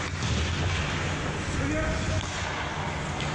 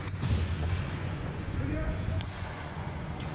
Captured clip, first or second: first